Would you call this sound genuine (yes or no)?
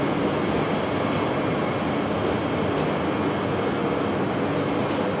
yes